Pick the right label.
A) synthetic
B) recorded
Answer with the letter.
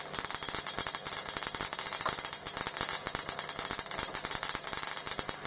B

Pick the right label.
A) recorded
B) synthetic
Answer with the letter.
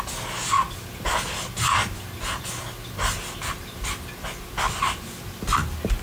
A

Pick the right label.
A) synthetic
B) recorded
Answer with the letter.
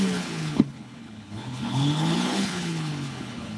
A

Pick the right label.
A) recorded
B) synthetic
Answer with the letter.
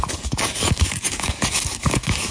B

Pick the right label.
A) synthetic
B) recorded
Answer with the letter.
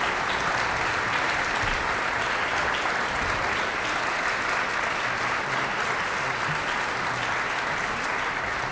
B